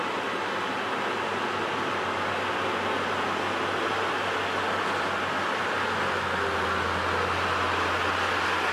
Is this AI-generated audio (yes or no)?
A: no